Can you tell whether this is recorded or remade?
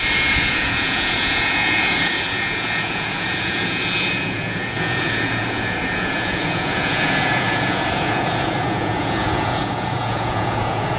remade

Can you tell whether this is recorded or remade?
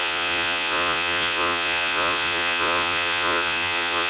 remade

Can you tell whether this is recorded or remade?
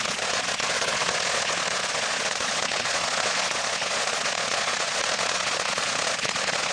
remade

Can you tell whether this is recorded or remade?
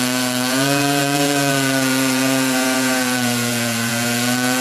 remade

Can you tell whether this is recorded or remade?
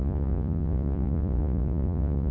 remade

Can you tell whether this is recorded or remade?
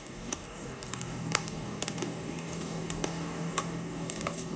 remade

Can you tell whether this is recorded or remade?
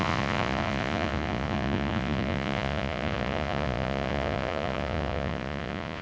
remade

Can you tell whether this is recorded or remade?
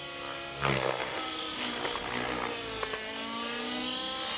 recorded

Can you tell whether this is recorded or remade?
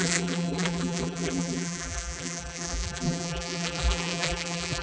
remade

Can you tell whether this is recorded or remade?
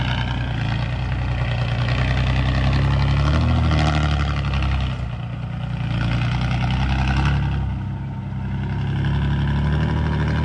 recorded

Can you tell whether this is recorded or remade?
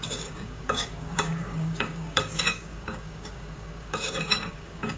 remade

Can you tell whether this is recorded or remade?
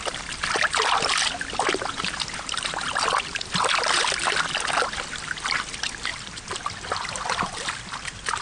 recorded